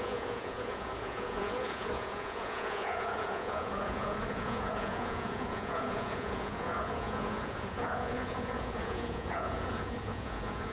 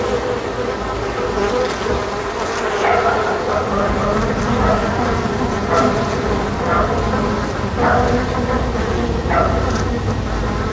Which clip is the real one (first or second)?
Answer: second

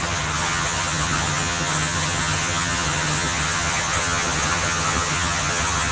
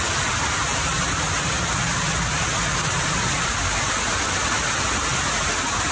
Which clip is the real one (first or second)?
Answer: second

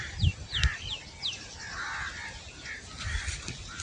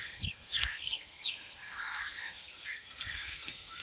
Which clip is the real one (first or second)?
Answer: first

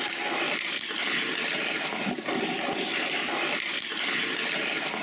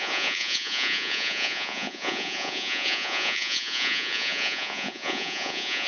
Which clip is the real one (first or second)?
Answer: first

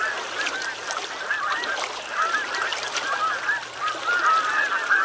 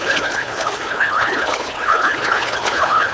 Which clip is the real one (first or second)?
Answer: first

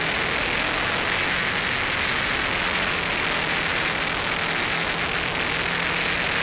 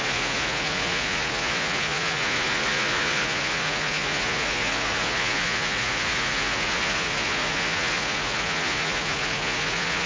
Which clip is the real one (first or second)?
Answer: first